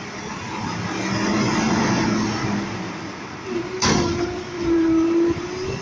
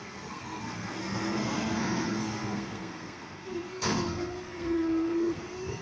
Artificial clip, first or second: second